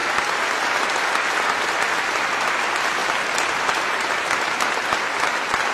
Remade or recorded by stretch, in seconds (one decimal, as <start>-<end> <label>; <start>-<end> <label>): 0.0-5.7 recorded